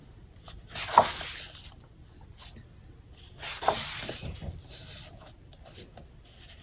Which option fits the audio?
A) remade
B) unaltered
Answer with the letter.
B